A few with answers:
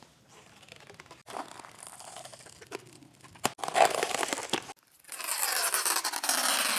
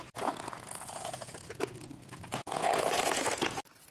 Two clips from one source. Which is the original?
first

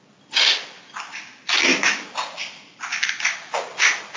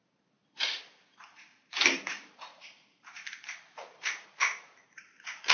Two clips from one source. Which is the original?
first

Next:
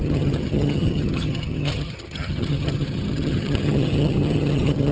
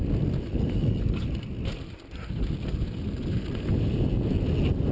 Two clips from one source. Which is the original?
second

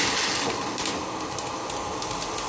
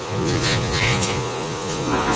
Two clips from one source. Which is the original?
first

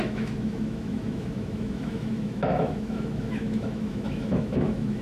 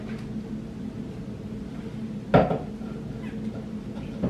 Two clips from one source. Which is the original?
second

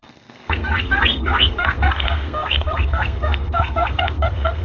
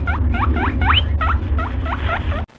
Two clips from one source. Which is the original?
second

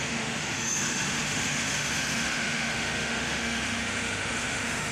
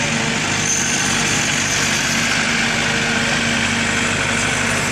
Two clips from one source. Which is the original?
second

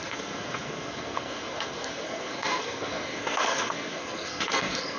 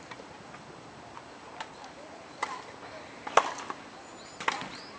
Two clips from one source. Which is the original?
second